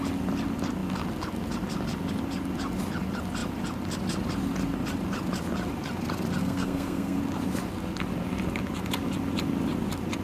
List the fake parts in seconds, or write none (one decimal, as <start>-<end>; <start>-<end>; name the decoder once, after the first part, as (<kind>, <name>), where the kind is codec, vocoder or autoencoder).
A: 6.4-7.2 (codec, SNAC)